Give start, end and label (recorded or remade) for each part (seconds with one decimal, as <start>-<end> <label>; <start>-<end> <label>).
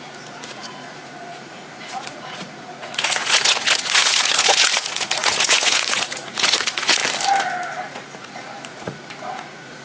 0.0-7.0 remade; 7.0-7.9 recorded; 7.9-9.8 remade